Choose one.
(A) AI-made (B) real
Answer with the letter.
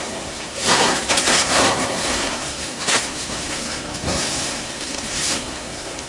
A